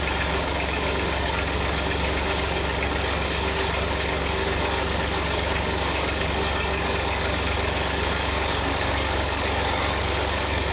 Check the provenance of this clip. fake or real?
fake